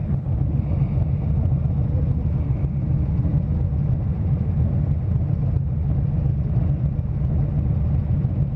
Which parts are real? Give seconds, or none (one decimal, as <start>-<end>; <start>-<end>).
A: 0.6-8.6